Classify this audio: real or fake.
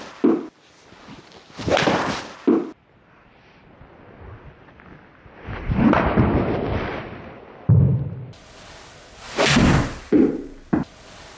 real